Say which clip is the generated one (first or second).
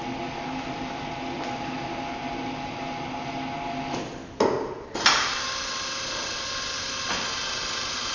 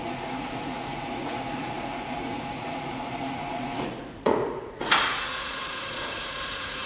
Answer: second